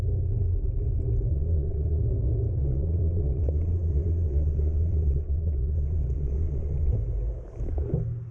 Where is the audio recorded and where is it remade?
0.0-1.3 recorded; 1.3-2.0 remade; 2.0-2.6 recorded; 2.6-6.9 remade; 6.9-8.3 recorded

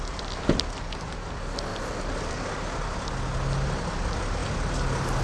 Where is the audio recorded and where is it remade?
0.0-5.2 recorded

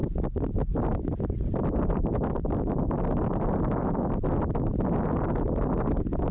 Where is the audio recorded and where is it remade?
0.0-3.8 remade; 3.8-6.3 recorded